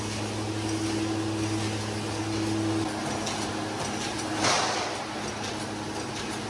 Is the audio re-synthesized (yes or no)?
no